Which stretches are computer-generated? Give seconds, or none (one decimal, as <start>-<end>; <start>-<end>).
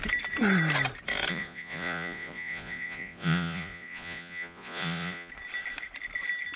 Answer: 1.3-5.3